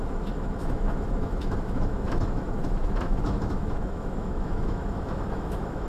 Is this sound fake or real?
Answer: fake